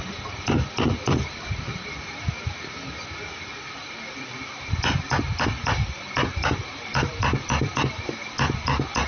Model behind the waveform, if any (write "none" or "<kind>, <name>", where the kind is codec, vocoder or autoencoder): vocoder, BigVGAN v2